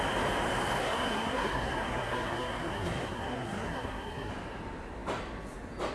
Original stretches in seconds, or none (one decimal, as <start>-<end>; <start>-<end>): 0.0-0.8; 4.3-5.9